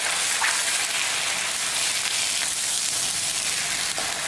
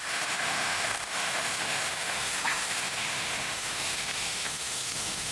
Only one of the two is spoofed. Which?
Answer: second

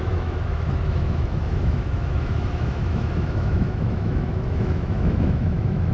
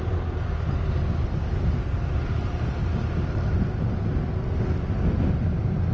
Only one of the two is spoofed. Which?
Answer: first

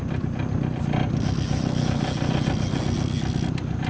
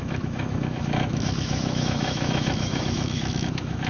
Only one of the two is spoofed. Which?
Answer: second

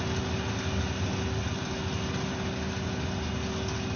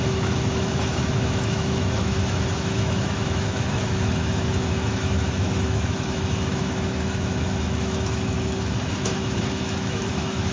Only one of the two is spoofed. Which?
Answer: second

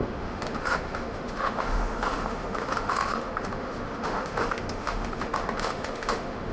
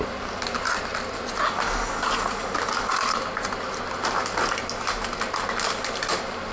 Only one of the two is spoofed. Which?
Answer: first